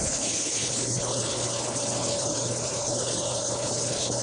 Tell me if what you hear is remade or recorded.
remade